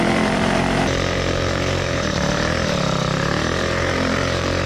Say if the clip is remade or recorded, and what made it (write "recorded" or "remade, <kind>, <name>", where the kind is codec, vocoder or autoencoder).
remade, vocoder, BigVGAN v2